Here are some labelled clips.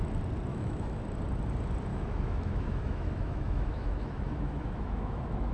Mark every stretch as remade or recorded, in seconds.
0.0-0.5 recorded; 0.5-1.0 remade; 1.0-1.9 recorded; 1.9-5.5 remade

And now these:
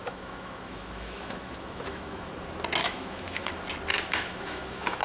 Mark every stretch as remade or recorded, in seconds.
0.0-2.3 remade; 2.3-2.8 recorded; 2.8-3.5 remade; 3.5-3.9 recorded; 3.9-5.0 remade

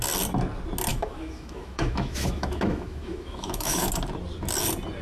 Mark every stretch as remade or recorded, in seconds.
0.0-0.9 recorded; 0.9-3.9 remade; 3.9-5.0 recorded

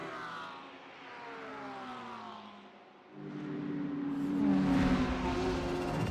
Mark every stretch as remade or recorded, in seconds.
0.0-6.1 recorded

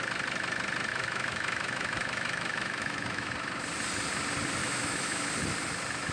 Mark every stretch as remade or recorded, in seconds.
0.0-0.9 recorded; 0.9-3.3 remade; 3.3-4.6 recorded; 4.6-5.3 remade; 5.3-6.1 recorded

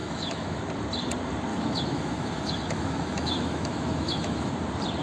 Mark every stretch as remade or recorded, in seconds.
0.0-0.6 remade; 0.6-1.5 recorded; 1.5-4.5 remade; 4.5-5.0 recorded

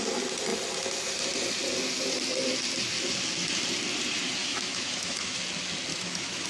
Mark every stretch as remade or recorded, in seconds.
0.0-4.4 recorded; 4.4-5.4 remade; 5.4-5.9 recorded; 5.9-6.5 remade

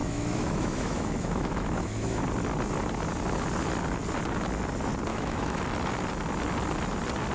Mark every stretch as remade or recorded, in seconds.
0.0-2.2 remade; 2.2-5.1 recorded; 5.1-5.6 remade; 5.6-7.3 recorded